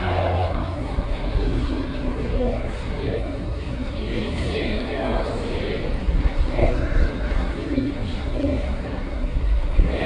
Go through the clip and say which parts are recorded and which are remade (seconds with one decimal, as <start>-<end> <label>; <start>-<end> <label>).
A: 0.0-5.3 remade; 5.3-6.0 recorded; 6.0-10.1 remade